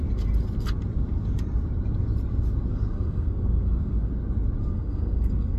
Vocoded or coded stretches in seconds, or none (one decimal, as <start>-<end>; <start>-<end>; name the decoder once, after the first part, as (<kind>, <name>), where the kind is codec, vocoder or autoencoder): 2.7-4.1 (codec, SNAC); 4.6-5.6